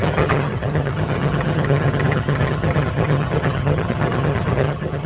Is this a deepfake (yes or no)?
yes